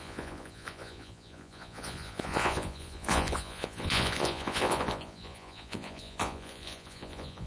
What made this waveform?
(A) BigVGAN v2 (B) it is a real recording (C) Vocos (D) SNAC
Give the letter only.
C